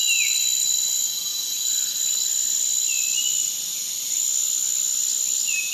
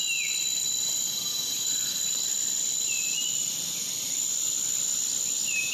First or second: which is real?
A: first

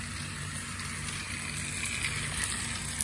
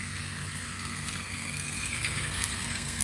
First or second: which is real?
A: first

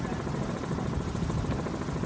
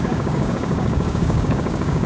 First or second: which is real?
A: first